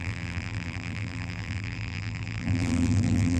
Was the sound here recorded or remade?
remade